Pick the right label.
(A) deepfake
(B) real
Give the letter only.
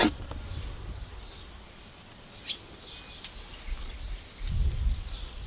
B